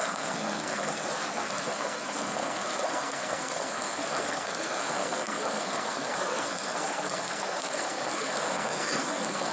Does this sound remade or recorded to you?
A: remade